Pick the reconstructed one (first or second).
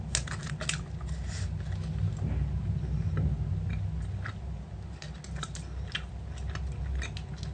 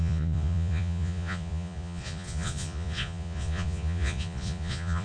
second